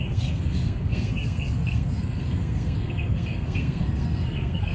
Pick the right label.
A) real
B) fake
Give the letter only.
B